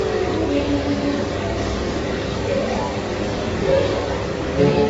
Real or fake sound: fake